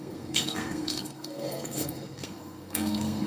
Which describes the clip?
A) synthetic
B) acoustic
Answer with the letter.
A